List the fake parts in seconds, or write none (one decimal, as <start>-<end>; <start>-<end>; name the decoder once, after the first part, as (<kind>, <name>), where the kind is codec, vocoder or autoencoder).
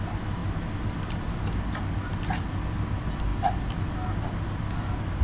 none